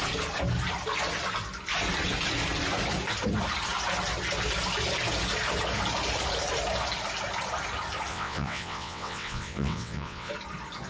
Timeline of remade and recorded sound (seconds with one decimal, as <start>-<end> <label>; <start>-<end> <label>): 0.0-8.1 recorded; 8.1-10.3 remade; 10.3-10.9 recorded

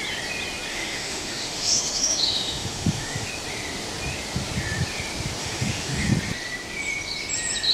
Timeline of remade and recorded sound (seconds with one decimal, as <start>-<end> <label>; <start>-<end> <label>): 0.0-0.7 recorded; 0.7-3.3 remade; 3.3-5.4 recorded; 5.4-6.1 remade; 6.1-7.7 recorded

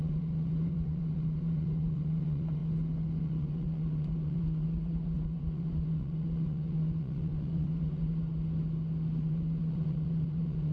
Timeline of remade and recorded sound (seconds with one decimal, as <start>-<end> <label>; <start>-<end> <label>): 0.0-2.6 remade; 2.6-3.2 recorded; 3.2-8.2 remade; 8.2-9.2 recorded; 9.2-10.7 remade

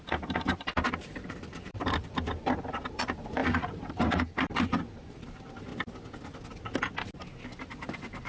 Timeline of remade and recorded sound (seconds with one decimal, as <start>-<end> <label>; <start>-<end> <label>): 0.0-5.7 remade; 5.7-7.6 recorded; 7.6-8.3 remade